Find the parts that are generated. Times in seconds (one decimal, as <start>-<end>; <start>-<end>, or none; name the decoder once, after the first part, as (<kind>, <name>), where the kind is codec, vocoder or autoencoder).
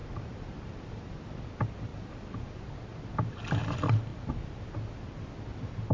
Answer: 0.0-1.1 (vocoder, BigVGAN v2); 1.9-3.4